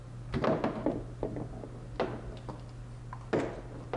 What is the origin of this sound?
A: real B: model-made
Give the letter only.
A